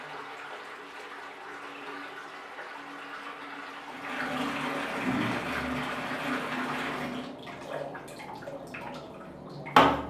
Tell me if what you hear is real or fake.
real